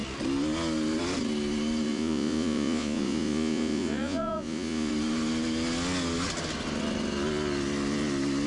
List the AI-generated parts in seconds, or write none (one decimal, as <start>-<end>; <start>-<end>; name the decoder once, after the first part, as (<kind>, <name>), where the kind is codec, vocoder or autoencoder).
1.9-4.9 (vocoder, Vocos)